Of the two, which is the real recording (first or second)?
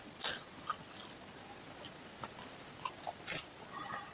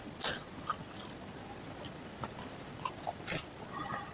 first